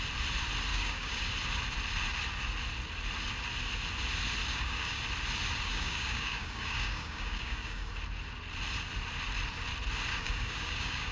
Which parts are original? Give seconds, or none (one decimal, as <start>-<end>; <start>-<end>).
0.0-0.7; 1.2-4.5; 5.0-5.7; 7.9-10.1